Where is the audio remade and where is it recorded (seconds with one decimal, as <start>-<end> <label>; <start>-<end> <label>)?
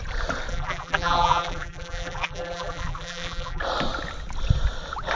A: 0.0-0.5 recorded; 0.5-3.6 remade; 3.6-5.2 recorded